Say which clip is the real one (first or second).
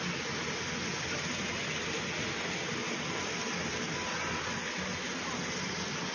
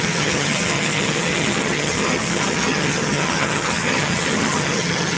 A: first